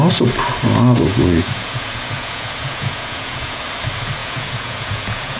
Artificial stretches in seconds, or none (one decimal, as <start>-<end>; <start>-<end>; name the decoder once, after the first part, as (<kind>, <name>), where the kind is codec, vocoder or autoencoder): 1.1-3.6 (vocoder, Vocos); 4.2-5.4